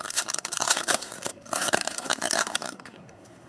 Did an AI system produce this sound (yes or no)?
yes